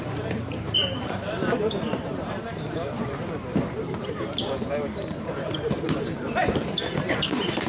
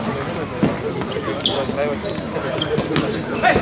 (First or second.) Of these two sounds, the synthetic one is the first